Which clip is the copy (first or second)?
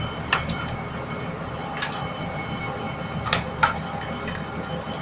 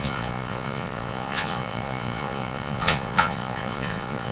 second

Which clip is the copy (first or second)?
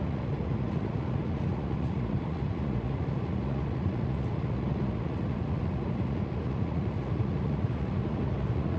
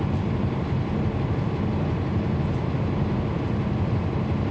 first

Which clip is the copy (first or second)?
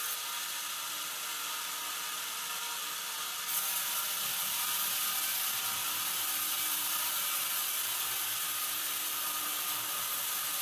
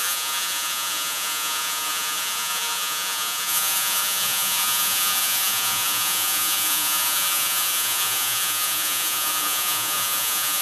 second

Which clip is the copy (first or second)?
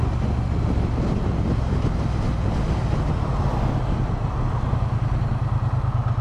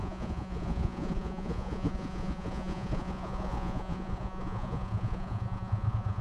second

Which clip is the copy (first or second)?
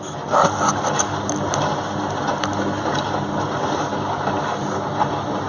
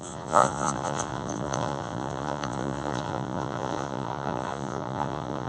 second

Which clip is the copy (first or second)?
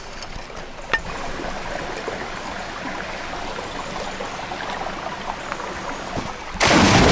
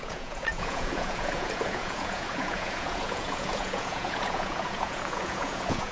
second